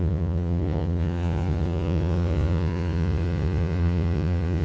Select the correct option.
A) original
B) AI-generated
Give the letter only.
B